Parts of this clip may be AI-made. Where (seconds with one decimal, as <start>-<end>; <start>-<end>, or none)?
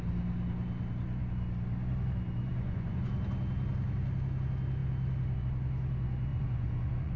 2.5-3.1; 6.3-7.2